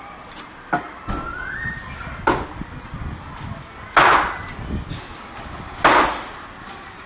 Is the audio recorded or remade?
recorded